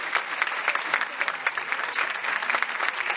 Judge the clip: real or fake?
real